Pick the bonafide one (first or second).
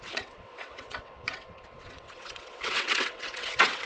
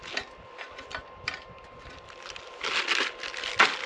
second